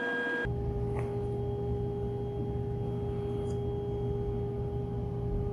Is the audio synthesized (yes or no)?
no